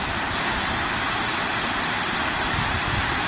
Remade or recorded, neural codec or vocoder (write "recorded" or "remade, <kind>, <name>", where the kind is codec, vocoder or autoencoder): recorded